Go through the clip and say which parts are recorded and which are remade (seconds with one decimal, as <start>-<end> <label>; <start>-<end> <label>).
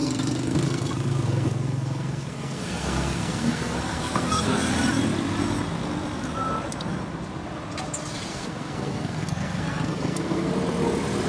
0.0-4.7 remade; 4.7-8.3 recorded; 8.3-10.5 remade; 10.5-11.3 recorded